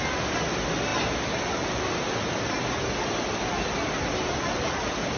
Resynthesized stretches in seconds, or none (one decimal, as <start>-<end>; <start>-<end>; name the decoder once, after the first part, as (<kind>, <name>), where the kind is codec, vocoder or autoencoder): none